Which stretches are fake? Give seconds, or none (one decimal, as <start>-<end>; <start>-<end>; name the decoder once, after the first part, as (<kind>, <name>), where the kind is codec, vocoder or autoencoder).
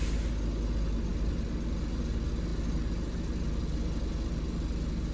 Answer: none